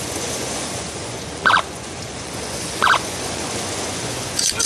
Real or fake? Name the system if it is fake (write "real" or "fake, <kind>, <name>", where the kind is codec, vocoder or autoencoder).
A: fake, vocoder, Vocos